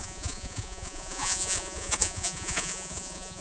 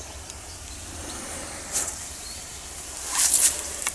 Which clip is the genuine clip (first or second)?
second